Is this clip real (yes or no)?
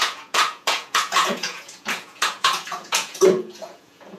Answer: no